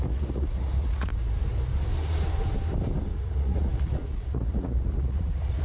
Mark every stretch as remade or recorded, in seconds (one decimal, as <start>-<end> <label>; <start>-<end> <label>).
0.0-1.1 remade; 1.1-3.1 recorded; 3.1-5.6 remade